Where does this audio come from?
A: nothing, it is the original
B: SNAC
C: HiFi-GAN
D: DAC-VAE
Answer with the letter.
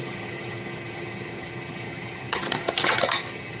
C